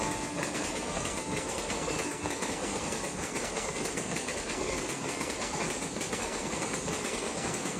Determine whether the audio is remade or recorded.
remade